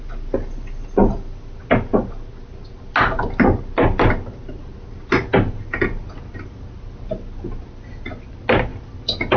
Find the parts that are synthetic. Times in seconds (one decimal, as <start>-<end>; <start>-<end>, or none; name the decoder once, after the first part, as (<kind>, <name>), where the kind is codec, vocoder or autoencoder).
none